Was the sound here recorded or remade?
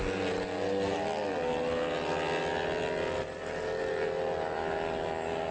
recorded